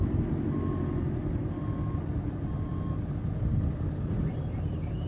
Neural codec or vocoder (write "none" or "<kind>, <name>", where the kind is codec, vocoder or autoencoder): none